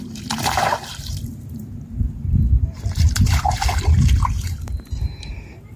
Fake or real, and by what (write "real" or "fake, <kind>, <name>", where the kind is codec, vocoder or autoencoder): fake, vocoder, BigVGAN v2